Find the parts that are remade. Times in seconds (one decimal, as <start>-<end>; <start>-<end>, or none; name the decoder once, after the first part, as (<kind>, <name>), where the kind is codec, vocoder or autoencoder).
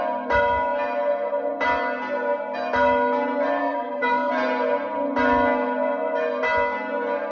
3.6-4.3 (codec, SNAC)